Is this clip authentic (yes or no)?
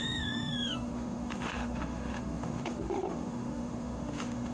no